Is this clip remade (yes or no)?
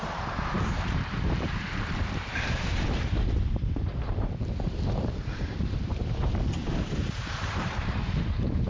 yes